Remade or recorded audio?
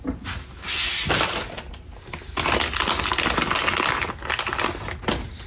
recorded